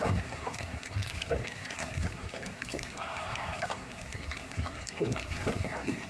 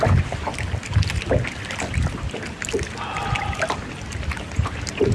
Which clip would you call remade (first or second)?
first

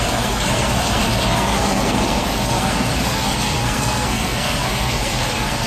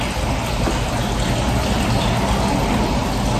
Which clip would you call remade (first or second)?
first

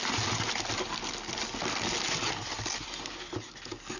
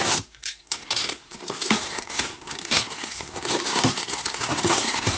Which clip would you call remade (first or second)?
second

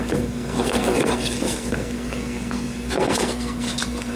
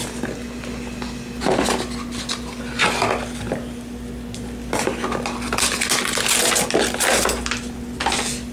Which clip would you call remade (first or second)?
first